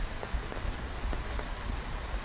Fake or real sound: real